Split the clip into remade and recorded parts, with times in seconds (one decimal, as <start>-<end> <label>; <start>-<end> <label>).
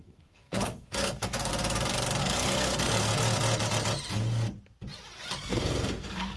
0.0-1.5 remade; 1.5-2.2 recorded; 2.2-3.1 remade; 3.1-5.5 recorded; 5.5-6.4 remade